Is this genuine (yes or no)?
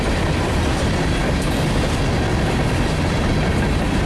yes